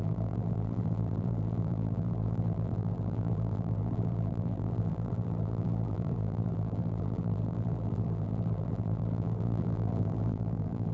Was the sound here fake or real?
fake